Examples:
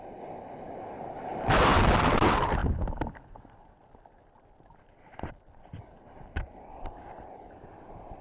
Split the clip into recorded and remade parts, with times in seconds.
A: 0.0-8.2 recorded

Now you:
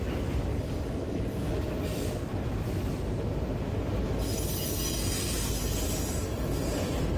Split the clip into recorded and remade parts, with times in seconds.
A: 0.0-0.5 recorded; 0.5-1.5 remade; 1.5-7.2 recorded

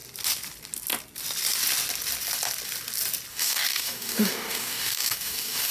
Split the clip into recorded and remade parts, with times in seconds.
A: 0.0-3.3 recorded; 3.3-5.7 remade

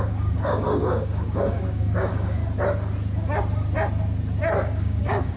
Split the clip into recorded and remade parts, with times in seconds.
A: 0.0-2.4 remade; 2.4-4.8 recorded; 4.8-5.4 remade

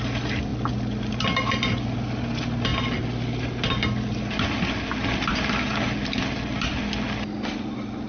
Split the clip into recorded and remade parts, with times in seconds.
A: 0.0-8.1 recorded

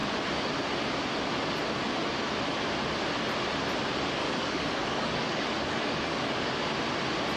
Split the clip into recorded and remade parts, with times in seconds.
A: 0.0-4.2 recorded; 4.2-6.5 remade; 6.5-7.4 recorded